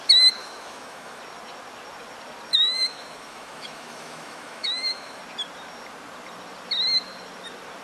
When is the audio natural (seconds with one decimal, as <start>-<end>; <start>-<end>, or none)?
0.0-0.4; 1.2-2.5; 5.2-7.8